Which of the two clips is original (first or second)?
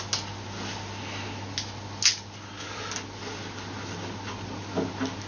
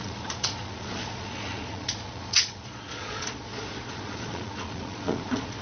first